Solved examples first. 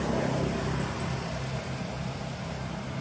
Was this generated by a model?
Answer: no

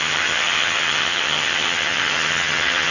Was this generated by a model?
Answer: yes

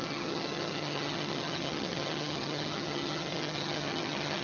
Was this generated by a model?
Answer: yes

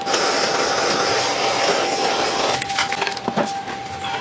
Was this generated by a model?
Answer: no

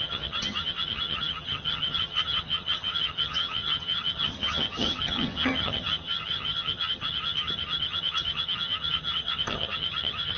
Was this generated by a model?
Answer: yes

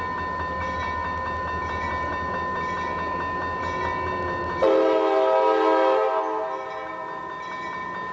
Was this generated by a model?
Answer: no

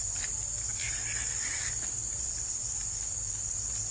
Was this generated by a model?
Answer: no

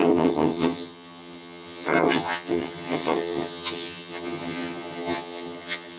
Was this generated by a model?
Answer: yes